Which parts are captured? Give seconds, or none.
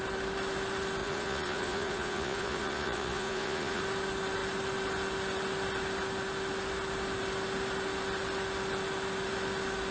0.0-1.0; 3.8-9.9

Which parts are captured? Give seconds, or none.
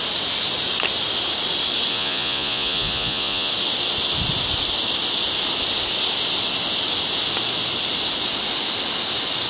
0.0-1.9; 3.5-9.5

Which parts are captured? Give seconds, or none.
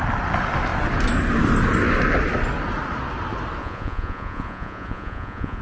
0.0-3.6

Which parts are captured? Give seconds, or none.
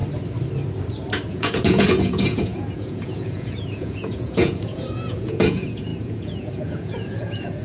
0.0-1.3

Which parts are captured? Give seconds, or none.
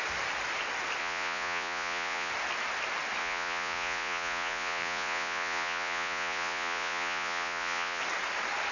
0.0-1.0; 2.3-3.2; 8.0-8.7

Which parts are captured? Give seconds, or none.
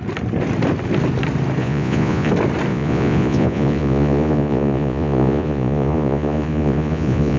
0.0-1.6; 2.3-2.7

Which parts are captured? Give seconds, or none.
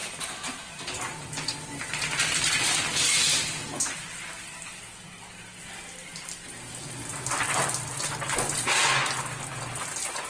0.0-10.3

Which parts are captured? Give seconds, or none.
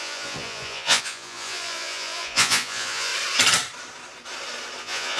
3.1-4.8